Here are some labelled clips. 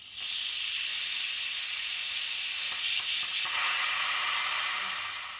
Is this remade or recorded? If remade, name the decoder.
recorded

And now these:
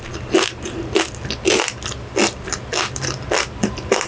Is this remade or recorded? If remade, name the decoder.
recorded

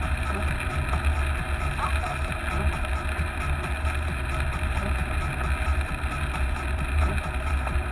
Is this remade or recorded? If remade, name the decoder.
recorded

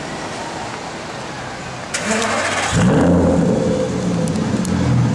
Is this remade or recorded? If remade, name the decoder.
recorded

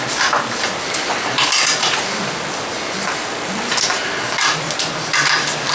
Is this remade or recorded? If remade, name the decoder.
recorded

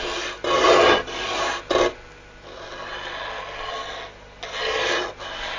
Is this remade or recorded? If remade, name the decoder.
recorded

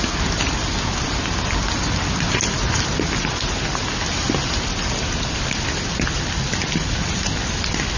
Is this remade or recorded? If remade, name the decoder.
recorded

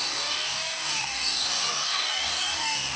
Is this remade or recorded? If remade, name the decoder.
remade, codec, DAC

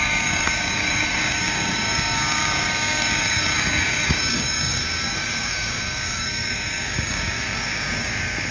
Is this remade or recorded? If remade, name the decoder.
remade, codec, DAC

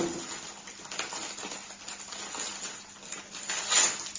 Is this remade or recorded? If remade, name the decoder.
recorded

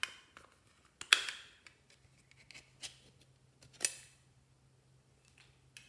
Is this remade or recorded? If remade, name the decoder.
recorded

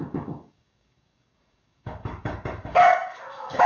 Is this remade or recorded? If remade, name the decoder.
remade, codec, DAC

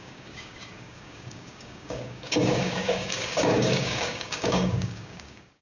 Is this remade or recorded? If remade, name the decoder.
remade, codec, DAC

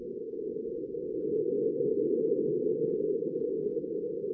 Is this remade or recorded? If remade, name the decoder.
remade, codec, DAC